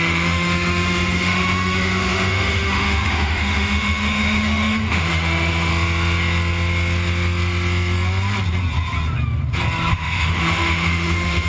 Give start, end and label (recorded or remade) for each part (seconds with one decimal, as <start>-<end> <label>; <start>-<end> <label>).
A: 0.0-5.7 remade; 5.7-9.9 recorded; 9.9-11.5 remade